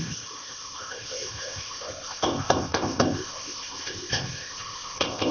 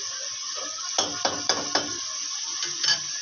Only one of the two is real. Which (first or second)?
second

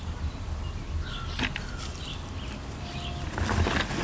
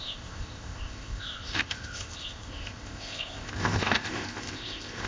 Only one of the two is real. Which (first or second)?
first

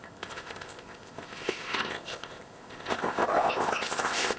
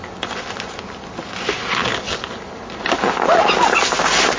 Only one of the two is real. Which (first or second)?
second